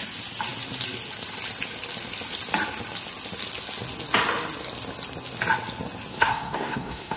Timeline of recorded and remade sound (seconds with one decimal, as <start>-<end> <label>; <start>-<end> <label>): 0.0-6.1 recorded; 6.1-7.2 remade